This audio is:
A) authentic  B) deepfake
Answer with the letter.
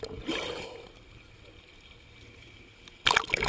A